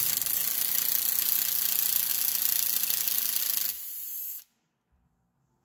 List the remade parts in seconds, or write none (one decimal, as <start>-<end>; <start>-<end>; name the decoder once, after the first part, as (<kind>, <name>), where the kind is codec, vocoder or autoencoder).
none